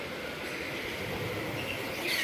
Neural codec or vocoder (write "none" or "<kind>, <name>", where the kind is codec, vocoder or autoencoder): none